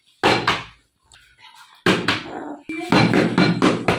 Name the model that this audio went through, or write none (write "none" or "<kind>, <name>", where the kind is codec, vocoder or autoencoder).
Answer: none